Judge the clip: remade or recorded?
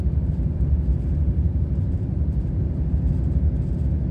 remade